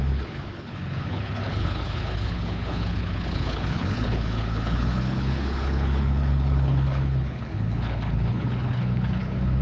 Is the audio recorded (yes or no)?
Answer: no